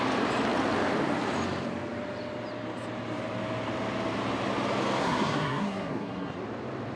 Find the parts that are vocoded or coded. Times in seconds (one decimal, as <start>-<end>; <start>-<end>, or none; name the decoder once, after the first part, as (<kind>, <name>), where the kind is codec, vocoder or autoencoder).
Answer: 5.0-6.4 (codec, SNAC)